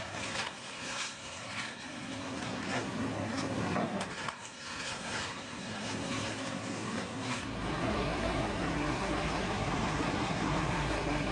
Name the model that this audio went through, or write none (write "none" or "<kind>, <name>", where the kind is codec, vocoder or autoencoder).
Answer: codec, SNAC